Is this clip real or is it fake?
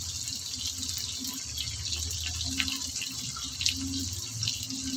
real